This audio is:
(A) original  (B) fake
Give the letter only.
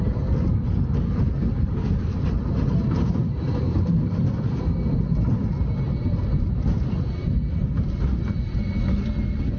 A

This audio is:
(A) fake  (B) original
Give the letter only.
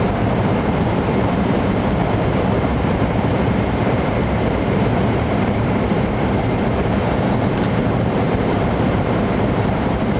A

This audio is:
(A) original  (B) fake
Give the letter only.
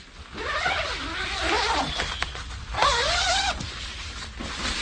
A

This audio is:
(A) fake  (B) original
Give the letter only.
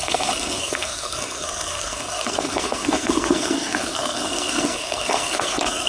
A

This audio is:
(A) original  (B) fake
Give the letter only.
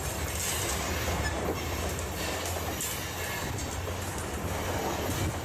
A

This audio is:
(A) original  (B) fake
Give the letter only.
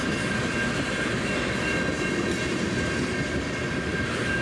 A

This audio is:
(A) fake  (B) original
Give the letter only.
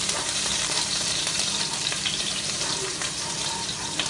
A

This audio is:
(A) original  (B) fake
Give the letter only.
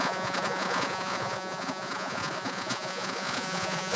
B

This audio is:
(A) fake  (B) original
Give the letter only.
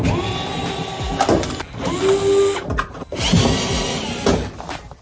B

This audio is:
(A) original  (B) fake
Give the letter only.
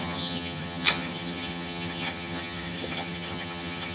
B